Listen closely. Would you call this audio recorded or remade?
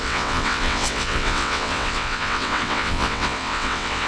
remade